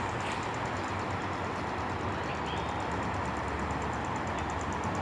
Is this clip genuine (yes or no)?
yes